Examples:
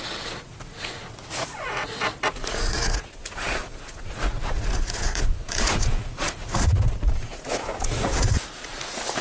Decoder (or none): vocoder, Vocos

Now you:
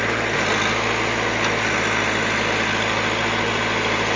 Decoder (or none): none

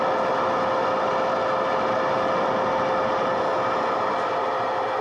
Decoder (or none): none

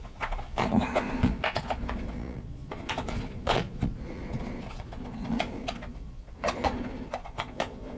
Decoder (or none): vocoder, Vocos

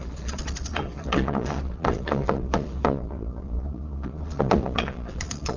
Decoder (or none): vocoder, Vocos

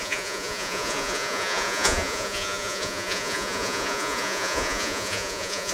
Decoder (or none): vocoder, Vocos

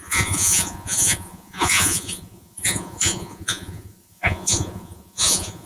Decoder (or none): vocoder, Vocos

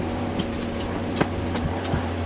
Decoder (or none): none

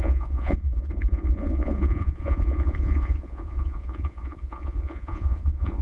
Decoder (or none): vocoder, Vocos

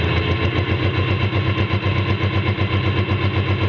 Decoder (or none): none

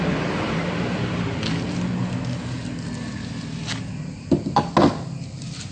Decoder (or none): none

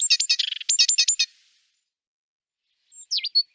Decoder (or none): none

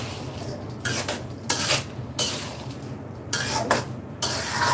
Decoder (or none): none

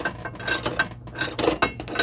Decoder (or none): none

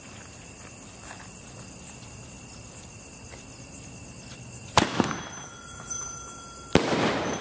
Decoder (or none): none